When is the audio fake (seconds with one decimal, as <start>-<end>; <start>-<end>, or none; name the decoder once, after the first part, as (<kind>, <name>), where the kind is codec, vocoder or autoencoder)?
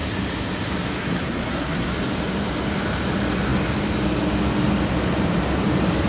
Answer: 1.0-1.9 (codec, SNAC)